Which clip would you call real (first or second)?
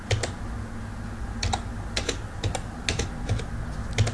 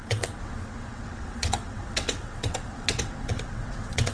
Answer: first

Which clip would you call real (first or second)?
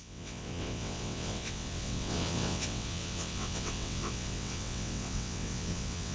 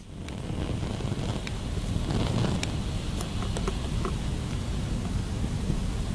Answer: second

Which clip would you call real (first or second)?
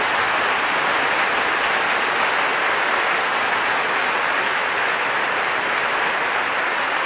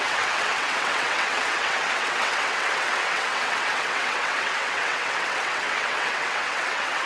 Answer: first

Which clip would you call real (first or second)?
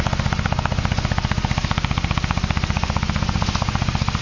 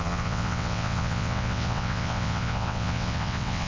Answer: first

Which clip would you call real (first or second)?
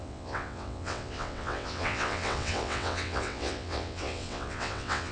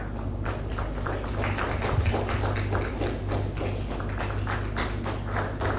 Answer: second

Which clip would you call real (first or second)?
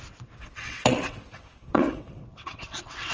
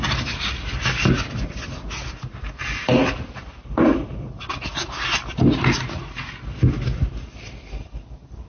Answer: second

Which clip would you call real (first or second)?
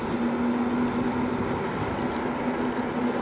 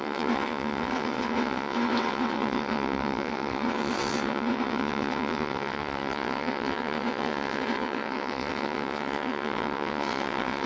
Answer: first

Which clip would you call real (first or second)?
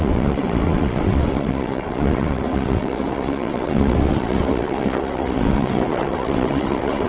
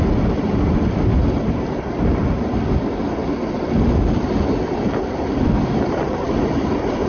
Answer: second